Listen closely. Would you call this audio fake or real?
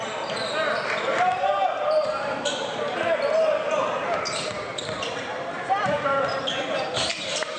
fake